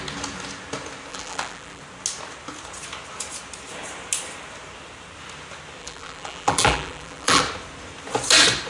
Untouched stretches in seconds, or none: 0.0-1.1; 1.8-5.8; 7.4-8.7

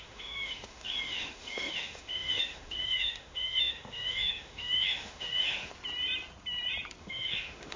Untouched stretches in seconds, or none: 5.7-7.0

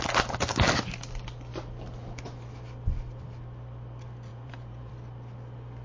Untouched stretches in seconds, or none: 0.0-4.3; 4.9-5.8